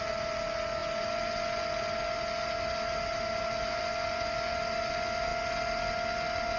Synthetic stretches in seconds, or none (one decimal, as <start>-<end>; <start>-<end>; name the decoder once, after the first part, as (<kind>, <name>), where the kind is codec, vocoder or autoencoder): none